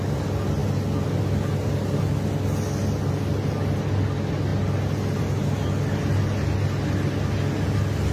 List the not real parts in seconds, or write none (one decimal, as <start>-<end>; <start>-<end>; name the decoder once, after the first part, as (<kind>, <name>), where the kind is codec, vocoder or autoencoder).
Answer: none